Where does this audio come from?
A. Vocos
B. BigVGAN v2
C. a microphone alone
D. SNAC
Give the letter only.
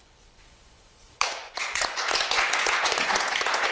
A